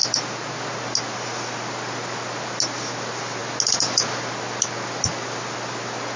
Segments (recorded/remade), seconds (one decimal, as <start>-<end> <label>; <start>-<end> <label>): 0.0-6.2 recorded